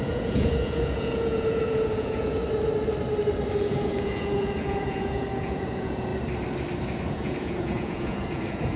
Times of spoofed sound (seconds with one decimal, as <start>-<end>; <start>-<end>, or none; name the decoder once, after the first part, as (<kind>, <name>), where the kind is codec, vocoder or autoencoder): 0.0-2.4 (vocoder, Vocos); 3.6-6.1; 7.1-8.8